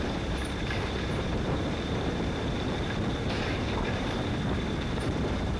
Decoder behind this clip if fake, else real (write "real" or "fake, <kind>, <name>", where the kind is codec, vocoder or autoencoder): fake, vocoder, BigVGAN v2